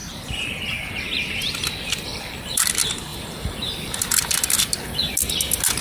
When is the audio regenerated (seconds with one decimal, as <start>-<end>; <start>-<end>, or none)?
0.0-0.9; 2.1-2.7; 3.1-4.6